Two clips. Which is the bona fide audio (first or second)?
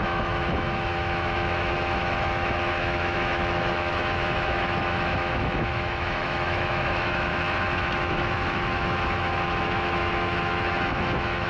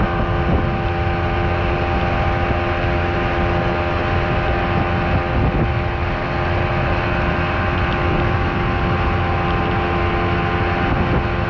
second